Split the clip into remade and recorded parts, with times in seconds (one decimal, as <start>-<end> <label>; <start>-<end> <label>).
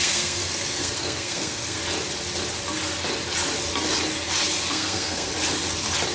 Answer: 0.0-1.8 remade; 1.8-4.7 recorded; 4.7-5.3 remade; 5.3-6.1 recorded